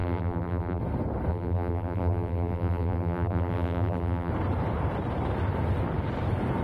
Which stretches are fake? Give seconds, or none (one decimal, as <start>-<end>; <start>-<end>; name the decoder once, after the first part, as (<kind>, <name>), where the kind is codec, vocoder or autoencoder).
0.0-0.8 (vocoder, BigVGAN v2); 1.3-4.3